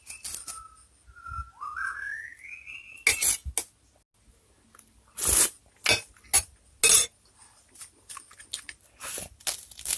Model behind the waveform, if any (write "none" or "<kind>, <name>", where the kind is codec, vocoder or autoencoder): none